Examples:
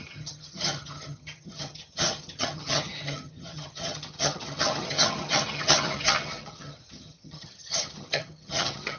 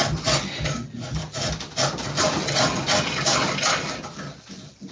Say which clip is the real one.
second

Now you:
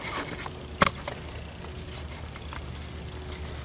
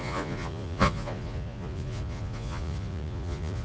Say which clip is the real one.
first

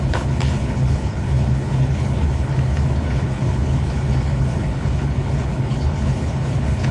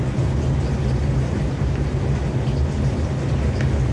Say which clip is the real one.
second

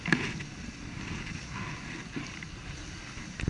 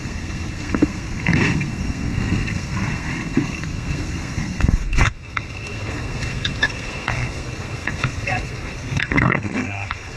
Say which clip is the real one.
first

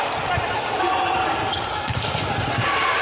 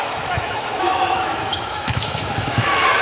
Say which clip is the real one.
first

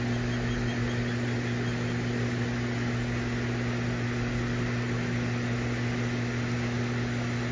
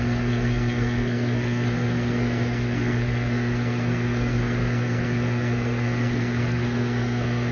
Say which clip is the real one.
first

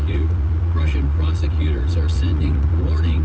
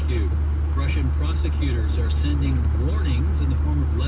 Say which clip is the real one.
second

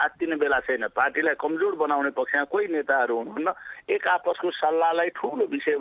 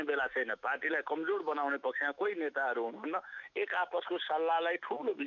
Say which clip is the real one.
first